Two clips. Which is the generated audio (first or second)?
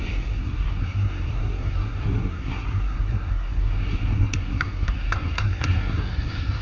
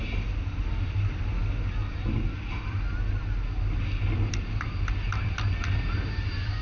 first